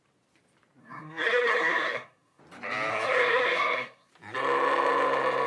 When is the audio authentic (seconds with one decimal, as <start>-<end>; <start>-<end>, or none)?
0.0-0.8; 2.4-2.9; 4.1-5.5